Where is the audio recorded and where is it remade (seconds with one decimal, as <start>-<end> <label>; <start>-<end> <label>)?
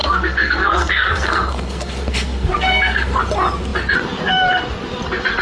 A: 0.0-3.2 remade; 3.2-5.4 recorded